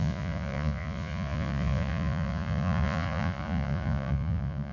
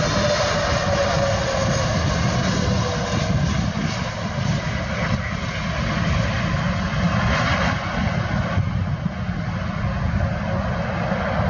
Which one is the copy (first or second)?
first